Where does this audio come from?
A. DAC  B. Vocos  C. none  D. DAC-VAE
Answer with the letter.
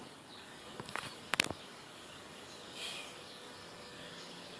A